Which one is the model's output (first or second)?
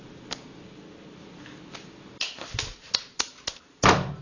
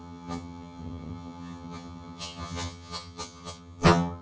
second